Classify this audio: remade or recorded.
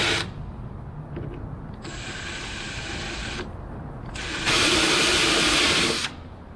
recorded